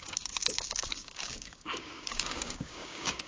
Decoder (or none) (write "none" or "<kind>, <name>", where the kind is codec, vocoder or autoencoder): codec, DAC